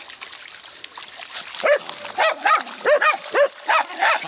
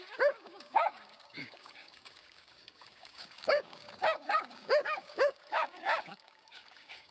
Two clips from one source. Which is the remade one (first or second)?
second